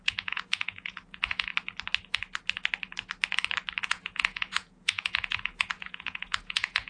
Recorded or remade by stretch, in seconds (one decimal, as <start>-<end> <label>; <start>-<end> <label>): 0.0-1.5 remade; 1.5-3.8 recorded; 3.8-6.9 remade